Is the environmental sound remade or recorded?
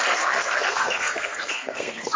remade